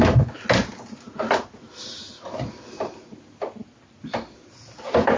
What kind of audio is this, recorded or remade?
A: recorded